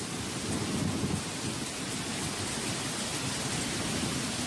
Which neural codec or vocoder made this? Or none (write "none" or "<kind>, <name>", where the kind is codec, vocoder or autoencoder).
none